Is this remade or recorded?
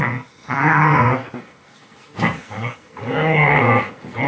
remade